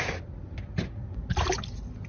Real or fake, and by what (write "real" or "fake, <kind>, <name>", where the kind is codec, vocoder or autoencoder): real